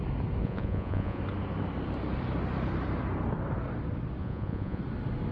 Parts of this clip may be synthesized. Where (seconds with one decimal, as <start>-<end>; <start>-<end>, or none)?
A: 0.4-1.2; 4.2-4.8

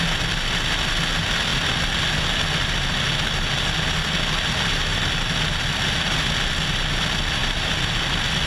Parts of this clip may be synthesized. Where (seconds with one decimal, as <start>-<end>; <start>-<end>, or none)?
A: none

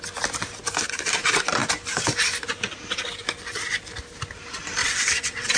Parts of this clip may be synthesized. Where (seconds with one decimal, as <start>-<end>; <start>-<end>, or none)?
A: 4.8-5.6